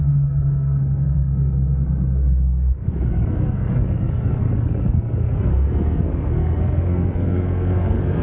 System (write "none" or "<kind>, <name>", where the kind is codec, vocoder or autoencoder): codec, SNAC